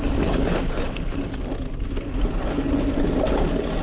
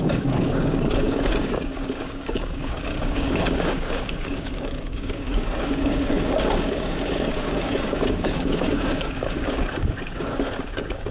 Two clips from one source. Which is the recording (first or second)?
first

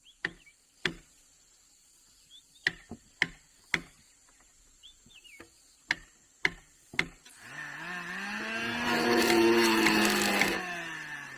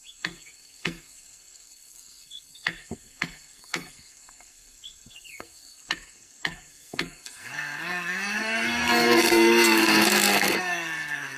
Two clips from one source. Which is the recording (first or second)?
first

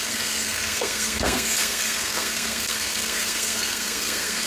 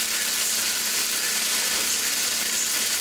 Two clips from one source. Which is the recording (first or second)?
second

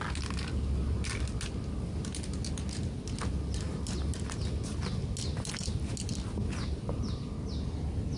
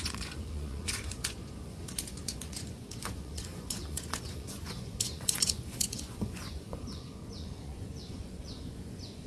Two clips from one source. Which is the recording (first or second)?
first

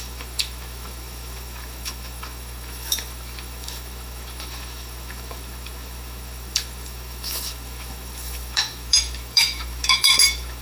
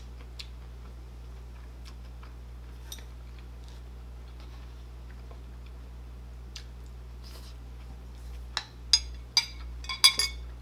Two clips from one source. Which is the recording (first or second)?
second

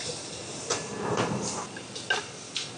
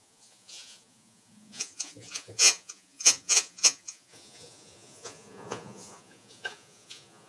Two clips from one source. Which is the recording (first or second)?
first